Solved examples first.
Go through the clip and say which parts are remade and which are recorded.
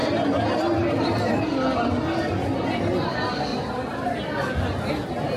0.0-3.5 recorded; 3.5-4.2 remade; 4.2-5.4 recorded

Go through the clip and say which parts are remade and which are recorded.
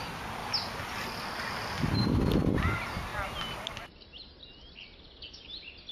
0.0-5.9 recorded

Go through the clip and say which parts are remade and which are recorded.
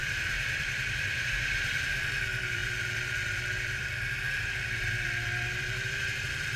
0.0-6.6 remade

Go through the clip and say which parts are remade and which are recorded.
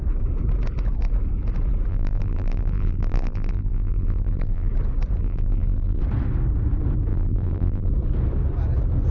0.0-1.9 recorded; 1.9-4.7 remade; 4.7-5.2 recorded; 5.2-6.0 remade; 6.0-7.1 recorded; 7.1-7.9 remade; 7.9-9.1 recorded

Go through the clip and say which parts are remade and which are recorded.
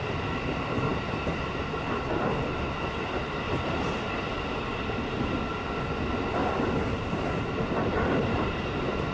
0.0-0.9 remade; 0.9-2.1 recorded; 2.1-4.3 remade; 4.3-6.8 recorded; 6.8-9.1 remade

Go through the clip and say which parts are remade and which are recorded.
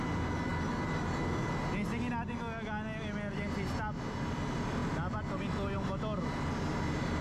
0.0-7.2 recorded